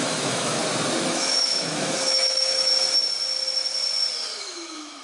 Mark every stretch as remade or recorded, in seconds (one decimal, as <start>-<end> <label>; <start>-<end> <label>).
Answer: 0.0-0.6 remade; 0.6-1.1 recorded; 1.1-2.7 remade; 2.7-4.4 recorded; 4.4-5.0 remade